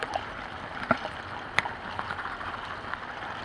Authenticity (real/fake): real